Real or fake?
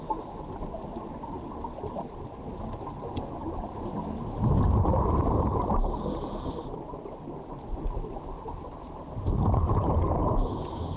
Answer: real